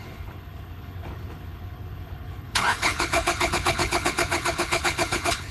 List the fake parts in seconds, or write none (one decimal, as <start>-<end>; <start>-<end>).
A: 0.0-5.5